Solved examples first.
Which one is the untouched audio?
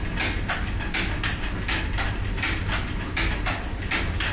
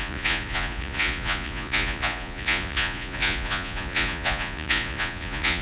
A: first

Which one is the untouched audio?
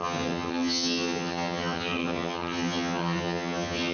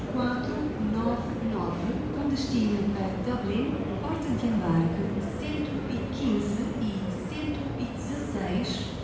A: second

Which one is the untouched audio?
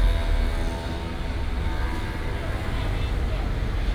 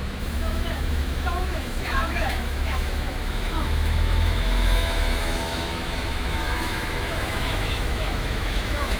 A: first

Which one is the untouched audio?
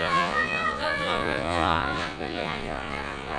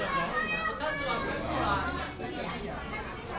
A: second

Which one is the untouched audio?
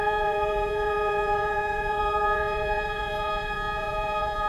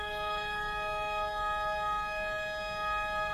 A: second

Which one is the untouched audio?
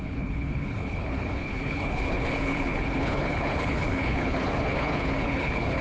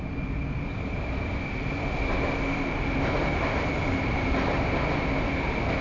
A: second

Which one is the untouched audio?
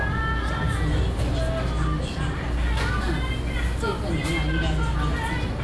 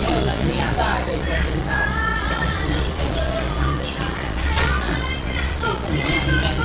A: first